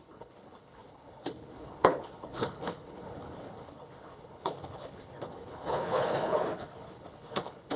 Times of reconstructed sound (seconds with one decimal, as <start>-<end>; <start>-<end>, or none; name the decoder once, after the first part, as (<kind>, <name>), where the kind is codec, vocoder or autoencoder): 0.0-7.8 (codec, HILCodec)